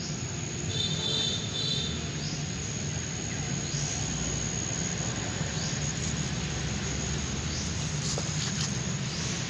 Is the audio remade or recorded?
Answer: recorded